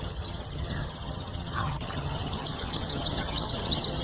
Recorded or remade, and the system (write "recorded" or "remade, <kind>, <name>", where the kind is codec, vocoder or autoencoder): remade, vocoder, HiFi-GAN